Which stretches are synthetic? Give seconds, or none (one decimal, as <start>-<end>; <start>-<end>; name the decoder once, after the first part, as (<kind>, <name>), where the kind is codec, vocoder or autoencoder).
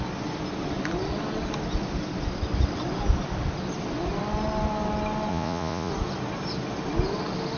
5.3-5.9 (vocoder, Vocos)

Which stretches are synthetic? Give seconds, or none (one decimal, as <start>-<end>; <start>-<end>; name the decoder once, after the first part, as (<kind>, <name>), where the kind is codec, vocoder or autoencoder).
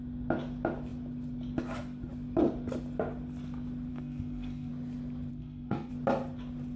3.9-4.7 (codec, SNAC); 5.3-5.9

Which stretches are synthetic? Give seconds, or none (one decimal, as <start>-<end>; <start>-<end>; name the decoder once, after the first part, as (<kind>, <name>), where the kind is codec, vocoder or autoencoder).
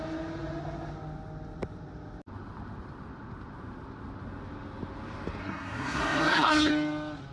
5.4-6.7 (codec, SNAC)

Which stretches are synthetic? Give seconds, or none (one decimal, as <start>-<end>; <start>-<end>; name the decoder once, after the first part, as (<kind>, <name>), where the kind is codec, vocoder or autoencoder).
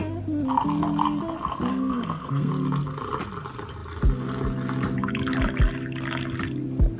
1.7-2.5 (codec, SNAC)